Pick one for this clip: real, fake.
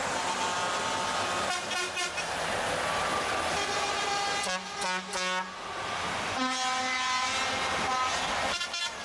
real